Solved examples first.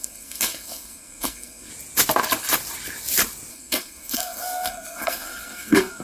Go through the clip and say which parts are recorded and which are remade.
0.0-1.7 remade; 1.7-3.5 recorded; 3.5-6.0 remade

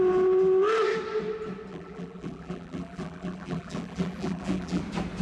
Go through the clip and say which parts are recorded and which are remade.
0.0-1.7 recorded; 1.7-4.8 remade; 4.8-5.2 recorded